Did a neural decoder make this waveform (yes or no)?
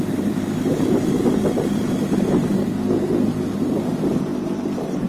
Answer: yes